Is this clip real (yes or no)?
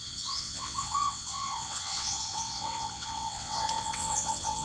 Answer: no